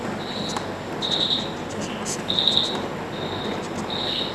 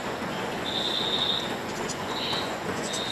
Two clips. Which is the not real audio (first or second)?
second